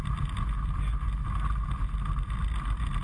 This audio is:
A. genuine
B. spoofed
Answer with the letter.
A